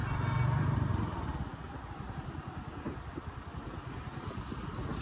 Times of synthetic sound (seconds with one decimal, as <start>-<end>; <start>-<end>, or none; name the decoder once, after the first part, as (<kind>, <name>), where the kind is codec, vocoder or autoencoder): none